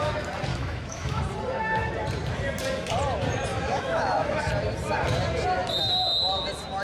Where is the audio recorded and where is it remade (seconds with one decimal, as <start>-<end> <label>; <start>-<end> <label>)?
0.0-0.5 recorded; 0.5-1.2 remade; 1.2-3.5 recorded; 3.5-4.4 remade; 4.4-6.8 recorded